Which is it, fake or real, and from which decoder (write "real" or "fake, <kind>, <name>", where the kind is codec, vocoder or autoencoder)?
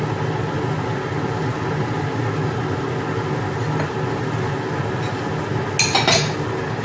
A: real